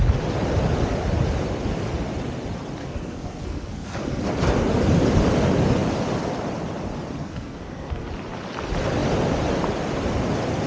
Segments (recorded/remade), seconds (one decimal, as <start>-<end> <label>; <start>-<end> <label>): 0.0-2.8 recorded; 2.8-4.2 remade; 4.2-7.2 recorded; 7.2-8.1 remade; 8.1-10.7 recorded